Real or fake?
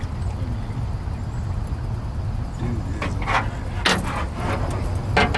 real